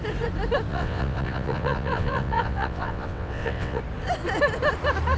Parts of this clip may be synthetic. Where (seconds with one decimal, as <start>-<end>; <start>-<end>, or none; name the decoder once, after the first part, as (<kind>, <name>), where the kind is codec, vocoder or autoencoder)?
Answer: 0.7-3.8 (vocoder, WaveNeXt)